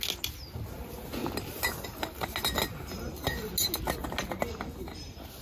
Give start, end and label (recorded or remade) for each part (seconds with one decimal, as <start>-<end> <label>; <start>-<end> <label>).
0.0-5.4 recorded